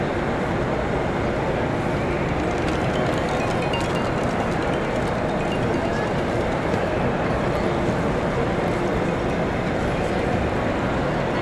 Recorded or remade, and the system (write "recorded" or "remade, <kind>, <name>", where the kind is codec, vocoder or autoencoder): recorded